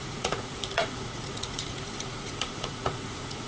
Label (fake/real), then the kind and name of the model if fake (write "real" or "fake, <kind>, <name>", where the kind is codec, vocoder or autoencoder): fake, vocoder, Vocos